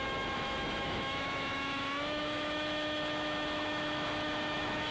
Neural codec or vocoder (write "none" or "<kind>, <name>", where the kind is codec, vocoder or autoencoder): autoencoder, DAC-VAE